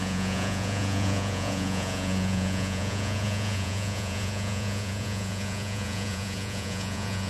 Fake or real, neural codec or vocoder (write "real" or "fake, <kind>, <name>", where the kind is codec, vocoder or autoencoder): fake, vocoder, Vocos